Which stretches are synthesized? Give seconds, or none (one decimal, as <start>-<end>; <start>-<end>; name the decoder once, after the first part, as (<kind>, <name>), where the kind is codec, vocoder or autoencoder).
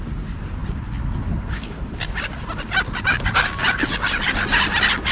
none